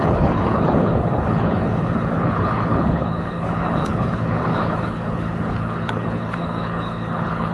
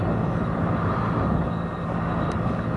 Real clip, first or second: second